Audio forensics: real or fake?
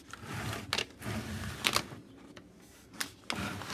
real